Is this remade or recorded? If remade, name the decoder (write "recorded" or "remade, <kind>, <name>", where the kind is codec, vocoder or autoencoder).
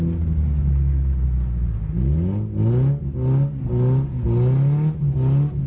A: recorded